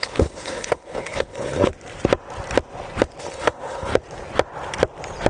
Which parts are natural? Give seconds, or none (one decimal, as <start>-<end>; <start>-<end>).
1.7-3.2; 3.9-5.3